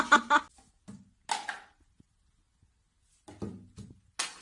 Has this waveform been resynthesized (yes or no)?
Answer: no